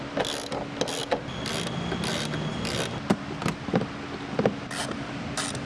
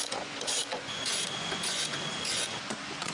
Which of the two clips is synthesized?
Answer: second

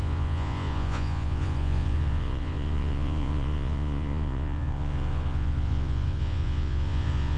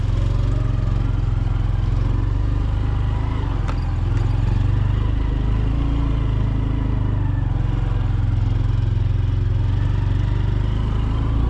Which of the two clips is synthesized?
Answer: first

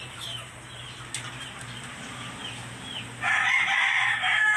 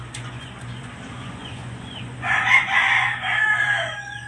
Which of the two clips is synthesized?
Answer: second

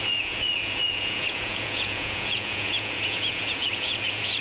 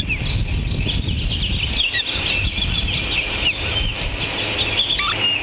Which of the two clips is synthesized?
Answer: first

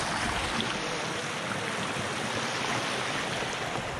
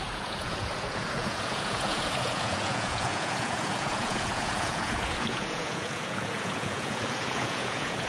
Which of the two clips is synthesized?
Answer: second